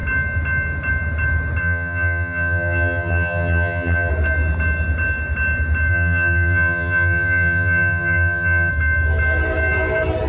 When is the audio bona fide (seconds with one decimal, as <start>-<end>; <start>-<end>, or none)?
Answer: 0.0-1.6; 4.1-5.9; 8.7-10.3